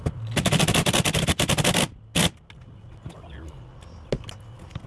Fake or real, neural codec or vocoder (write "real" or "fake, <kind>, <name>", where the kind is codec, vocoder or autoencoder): real